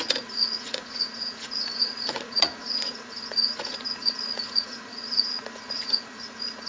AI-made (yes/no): yes